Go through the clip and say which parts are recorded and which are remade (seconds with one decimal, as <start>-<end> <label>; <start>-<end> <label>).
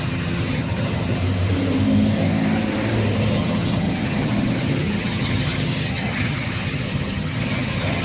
0.0-1.2 remade; 1.2-3.3 recorded; 3.3-8.0 remade